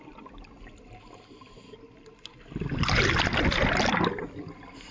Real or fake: real